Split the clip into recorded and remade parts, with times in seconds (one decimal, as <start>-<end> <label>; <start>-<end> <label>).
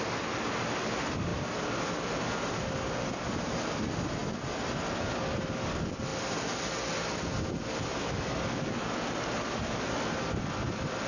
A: 0.0-11.1 recorded